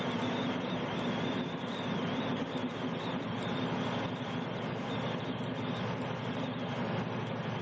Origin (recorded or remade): recorded